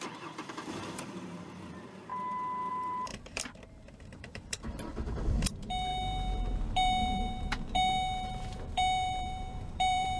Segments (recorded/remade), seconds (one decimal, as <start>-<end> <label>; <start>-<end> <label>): 0.0-2.1 remade; 2.1-2.7 recorded; 2.7-10.2 remade